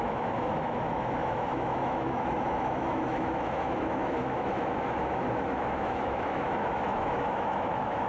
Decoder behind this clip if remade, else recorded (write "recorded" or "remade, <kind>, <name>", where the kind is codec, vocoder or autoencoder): remade, autoencoder, DAC-VAE